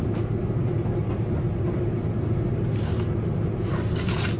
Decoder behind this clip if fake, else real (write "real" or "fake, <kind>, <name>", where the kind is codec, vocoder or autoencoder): real